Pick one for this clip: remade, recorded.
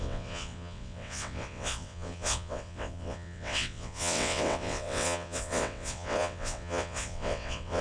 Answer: remade